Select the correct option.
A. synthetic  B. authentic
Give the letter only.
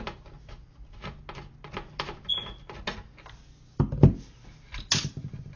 B